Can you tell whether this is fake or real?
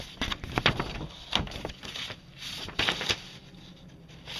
real